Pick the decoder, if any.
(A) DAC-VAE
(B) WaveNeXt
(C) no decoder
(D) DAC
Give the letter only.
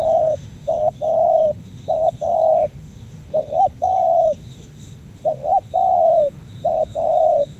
A